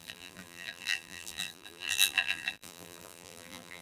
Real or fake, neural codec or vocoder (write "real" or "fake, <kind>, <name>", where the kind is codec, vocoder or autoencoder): fake, vocoder, BigVGAN v2